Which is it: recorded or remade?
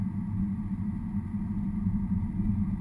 recorded